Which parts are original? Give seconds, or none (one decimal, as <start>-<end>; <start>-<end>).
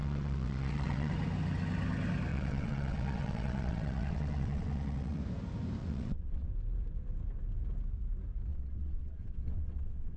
1.1-2.3; 5.2-5.8; 6.5-8.5